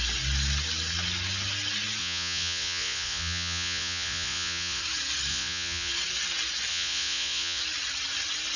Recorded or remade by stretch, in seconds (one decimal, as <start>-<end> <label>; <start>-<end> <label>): 0.0-2.0 recorded; 2.0-4.8 remade; 4.8-5.3 recorded; 5.3-5.9 remade; 5.9-6.7 recorded; 6.7-7.6 remade; 7.6-8.6 recorded